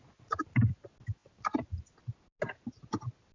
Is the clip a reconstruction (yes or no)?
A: no